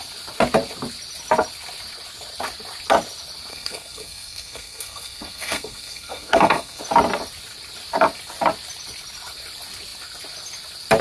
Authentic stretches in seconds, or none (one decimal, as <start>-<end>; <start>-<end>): 0.0-3.5; 6.8-11.0